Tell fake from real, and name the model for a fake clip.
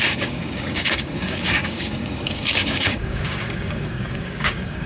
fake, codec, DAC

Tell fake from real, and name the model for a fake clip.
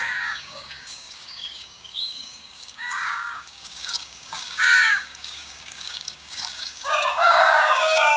fake, codec, DAC